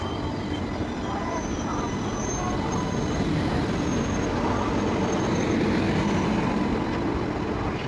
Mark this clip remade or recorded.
recorded